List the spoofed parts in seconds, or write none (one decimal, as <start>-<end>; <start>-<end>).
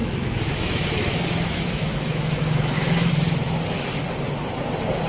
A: 0.0-3.1